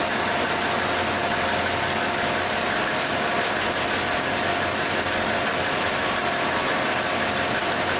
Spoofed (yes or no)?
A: no